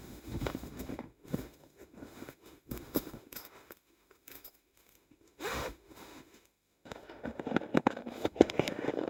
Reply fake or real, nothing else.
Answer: fake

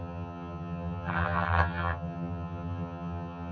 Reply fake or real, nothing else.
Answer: fake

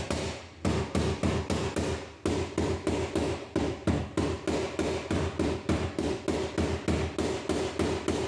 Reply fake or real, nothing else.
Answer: real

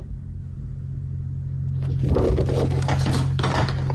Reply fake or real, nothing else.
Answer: real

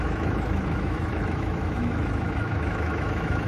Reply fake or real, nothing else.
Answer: fake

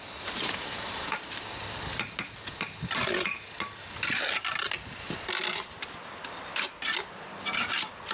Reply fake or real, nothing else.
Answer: real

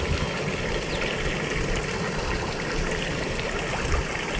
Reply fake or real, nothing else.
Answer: real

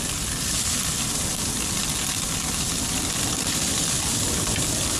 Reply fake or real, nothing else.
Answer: real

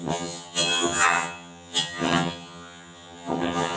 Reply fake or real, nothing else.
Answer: fake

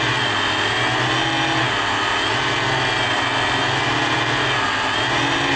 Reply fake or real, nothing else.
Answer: real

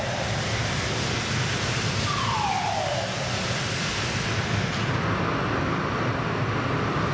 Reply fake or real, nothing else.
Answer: real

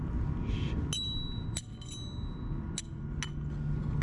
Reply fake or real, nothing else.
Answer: real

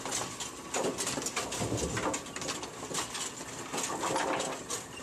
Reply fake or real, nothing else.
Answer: real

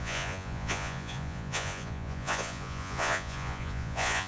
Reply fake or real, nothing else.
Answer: fake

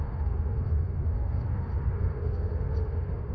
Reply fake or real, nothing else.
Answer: fake